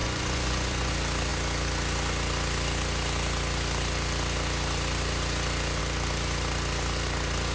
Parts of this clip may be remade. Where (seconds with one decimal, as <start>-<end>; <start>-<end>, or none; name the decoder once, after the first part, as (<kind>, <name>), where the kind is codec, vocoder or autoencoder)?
0.0-0.9 (vocoder, Vocos)